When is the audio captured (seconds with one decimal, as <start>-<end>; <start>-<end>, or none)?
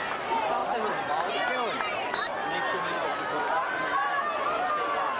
0.0-3.1; 4.1-5.2